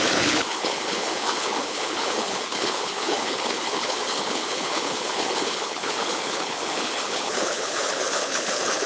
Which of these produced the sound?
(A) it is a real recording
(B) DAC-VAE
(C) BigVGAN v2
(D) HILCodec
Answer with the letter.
D